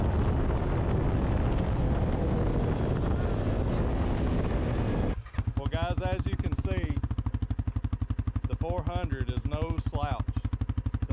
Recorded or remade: recorded